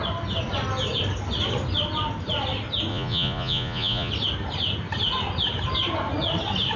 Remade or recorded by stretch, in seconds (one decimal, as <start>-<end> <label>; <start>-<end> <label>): 0.0-2.9 recorded; 2.9-4.1 remade; 4.1-6.8 recorded